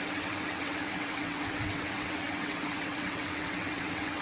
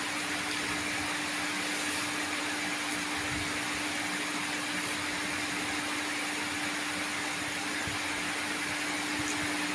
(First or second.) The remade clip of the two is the first